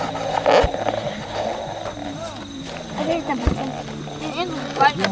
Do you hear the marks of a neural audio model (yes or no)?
no